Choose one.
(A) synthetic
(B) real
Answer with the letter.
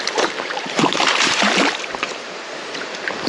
A